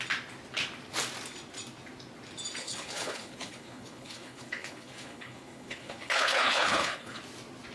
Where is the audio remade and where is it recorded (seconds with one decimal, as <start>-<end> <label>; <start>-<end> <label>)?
0.0-2.6 recorded; 2.6-7.2 remade; 7.2-7.7 recorded